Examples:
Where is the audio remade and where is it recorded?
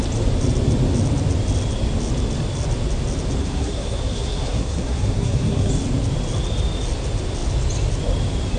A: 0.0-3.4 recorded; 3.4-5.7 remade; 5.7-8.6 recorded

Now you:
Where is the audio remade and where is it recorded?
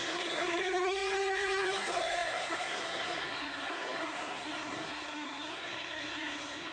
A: 0.0-6.7 remade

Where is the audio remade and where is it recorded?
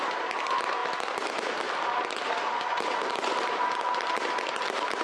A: 0.0-5.0 recorded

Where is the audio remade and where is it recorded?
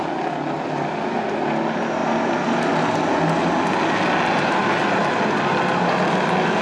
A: 0.0-6.6 recorded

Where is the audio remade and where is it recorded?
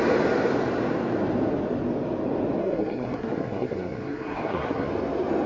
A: 0.0-2.6 recorded; 2.6-4.9 remade; 4.9-5.5 recorded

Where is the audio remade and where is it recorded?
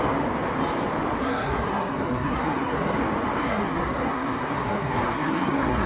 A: 0.0-1.2 recorded; 1.2-3.0 remade; 3.0-3.4 recorded; 3.4-5.9 remade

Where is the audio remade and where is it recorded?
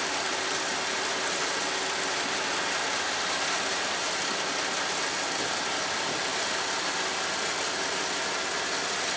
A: 0.0-9.2 recorded